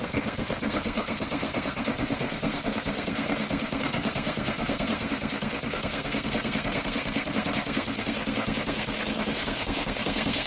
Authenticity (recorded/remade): remade